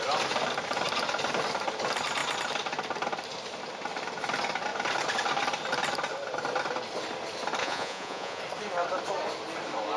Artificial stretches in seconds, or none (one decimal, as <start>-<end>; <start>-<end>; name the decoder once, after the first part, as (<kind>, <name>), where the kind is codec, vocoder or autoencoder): 7.6-8.4 (vocoder, Vocos)